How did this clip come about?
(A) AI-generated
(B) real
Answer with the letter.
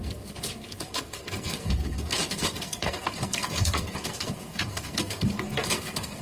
A